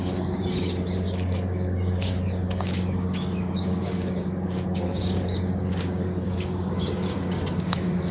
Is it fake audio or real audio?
fake